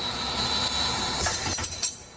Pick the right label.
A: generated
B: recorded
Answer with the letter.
B